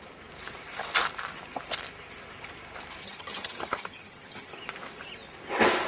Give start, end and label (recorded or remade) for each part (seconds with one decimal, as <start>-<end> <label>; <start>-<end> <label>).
0.0-3.0 recorded; 3.0-4.5 remade; 4.5-5.9 recorded

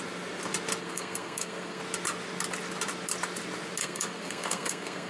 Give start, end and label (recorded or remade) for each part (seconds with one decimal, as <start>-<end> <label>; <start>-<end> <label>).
0.0-0.8 recorded; 0.8-1.8 remade; 1.8-3.8 recorded; 3.8-5.1 remade

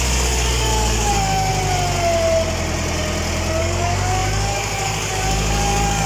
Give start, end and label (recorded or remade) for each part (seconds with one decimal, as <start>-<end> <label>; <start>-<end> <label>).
0.0-1.5 remade; 1.5-3.6 recorded; 3.6-6.1 remade

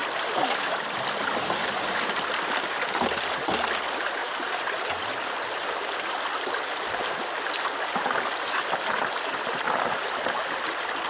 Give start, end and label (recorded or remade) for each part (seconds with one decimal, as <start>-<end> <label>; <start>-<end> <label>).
0.0-4.2 recorded; 4.2-5.1 remade; 5.1-11.1 recorded